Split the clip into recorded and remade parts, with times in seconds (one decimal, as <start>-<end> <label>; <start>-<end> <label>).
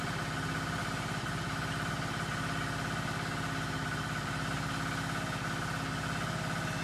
0.0-0.8 recorded; 0.8-1.9 remade; 1.9-3.8 recorded; 3.8-4.7 remade; 4.7-6.8 recorded